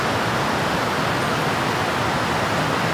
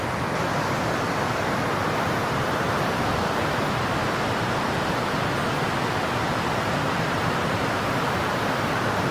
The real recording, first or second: first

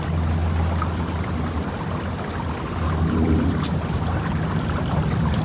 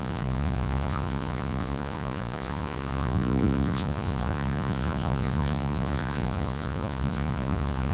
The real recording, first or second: first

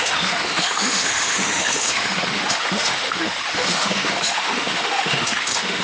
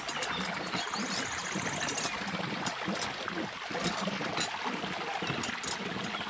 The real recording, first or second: second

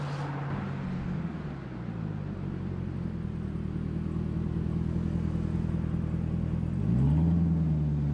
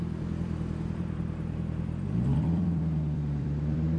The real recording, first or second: first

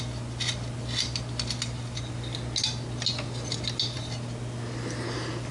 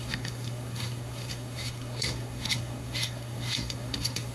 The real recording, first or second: first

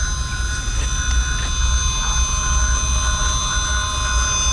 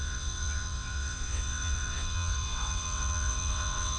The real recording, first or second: first